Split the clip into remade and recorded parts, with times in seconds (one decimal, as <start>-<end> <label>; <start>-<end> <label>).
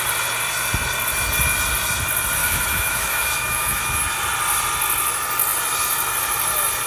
0.0-2.4 recorded; 2.4-4.0 remade; 4.0-6.9 recorded